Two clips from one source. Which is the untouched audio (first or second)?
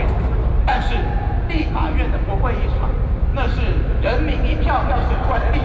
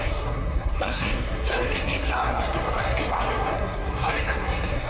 first